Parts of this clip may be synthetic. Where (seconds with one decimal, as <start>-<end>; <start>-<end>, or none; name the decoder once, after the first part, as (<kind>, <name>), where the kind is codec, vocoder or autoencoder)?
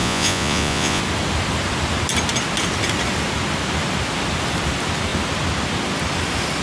0.0-1.0 (vocoder, Vocos)